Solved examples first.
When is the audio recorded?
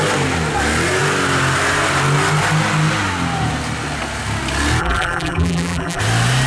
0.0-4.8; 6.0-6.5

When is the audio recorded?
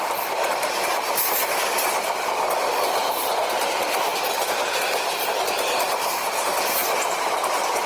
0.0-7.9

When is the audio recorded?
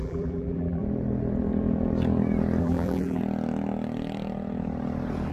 0.8-2.6; 3.2-5.3